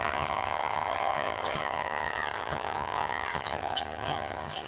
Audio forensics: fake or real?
fake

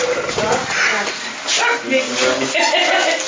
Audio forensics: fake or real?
real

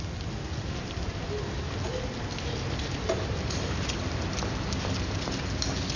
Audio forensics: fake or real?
real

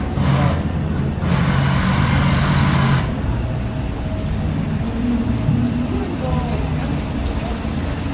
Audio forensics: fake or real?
real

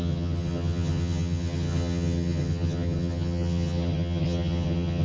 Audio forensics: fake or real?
fake